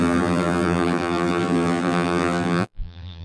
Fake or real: fake